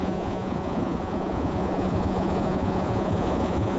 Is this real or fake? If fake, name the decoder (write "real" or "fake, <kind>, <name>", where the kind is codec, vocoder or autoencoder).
fake, vocoder, Vocos